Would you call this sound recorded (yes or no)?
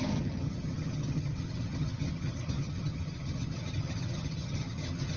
no